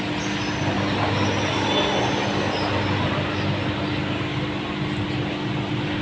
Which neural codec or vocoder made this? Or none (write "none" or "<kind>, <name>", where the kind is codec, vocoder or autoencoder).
none